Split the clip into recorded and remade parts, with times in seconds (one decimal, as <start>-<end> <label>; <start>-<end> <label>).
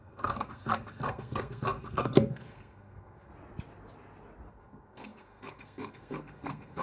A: 0.0-3.3 remade; 3.3-4.5 recorded; 4.5-6.8 remade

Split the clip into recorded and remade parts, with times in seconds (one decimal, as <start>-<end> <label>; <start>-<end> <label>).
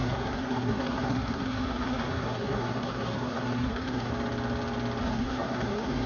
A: 0.0-4.1 remade; 4.1-5.0 recorded; 5.0-6.1 remade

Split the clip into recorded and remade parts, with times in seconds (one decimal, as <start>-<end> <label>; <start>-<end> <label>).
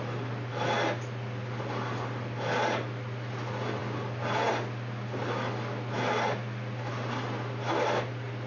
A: 0.0-8.5 recorded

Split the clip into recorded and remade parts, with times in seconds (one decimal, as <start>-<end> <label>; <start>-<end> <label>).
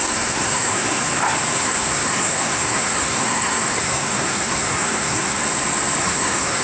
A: 0.0-1.0 remade; 1.0-1.5 recorded; 1.5-5.4 remade; 5.4-6.0 recorded; 6.0-6.6 remade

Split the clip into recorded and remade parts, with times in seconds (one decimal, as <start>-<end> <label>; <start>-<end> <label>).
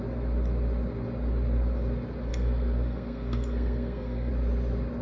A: 0.0-2.3 recorded; 2.3-4.3 remade; 4.3-5.0 recorded